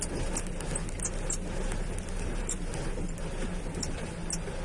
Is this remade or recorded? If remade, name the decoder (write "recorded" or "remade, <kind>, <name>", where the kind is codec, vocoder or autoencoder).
recorded